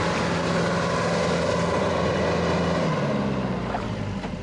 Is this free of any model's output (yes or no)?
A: yes